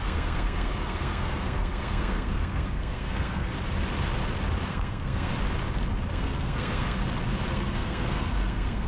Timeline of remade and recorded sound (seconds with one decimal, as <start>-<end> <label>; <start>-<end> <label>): 0.0-3.5 remade; 3.5-4.7 recorded; 4.7-5.3 remade; 5.3-6.1 recorded; 6.1-7.0 remade; 7.0-7.5 recorded; 7.5-8.9 remade